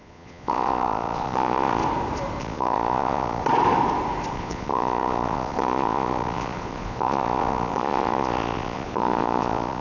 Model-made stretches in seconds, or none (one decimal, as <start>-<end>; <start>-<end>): 0.0-1.8; 2.4-3.4; 4.3-9.8